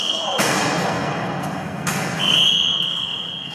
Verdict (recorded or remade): remade